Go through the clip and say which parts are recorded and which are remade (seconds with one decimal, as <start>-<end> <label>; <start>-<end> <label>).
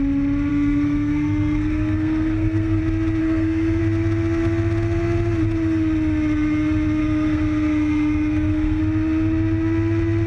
0.0-0.5 recorded; 0.5-2.8 remade; 2.8-3.2 recorded; 3.2-3.8 remade; 3.8-7.0 recorded; 7.0-8.8 remade; 8.8-10.3 recorded